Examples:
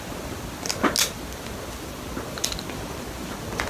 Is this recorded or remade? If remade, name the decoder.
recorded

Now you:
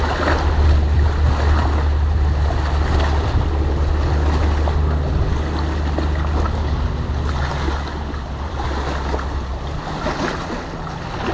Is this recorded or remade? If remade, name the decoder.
recorded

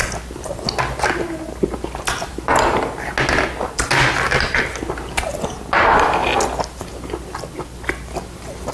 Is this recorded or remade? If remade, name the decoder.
recorded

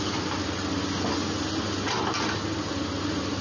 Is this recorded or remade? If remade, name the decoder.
recorded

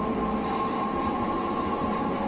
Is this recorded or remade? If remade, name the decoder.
recorded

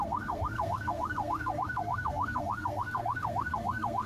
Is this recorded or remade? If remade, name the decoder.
remade, codec, SNAC